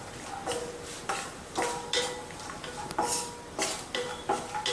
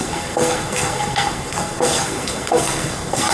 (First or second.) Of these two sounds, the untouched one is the first